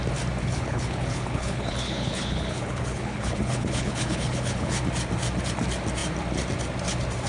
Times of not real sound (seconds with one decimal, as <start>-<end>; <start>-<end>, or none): 0.4-4.8